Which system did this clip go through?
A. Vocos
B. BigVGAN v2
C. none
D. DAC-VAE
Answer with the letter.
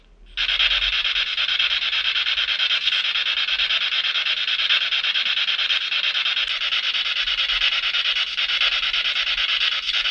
C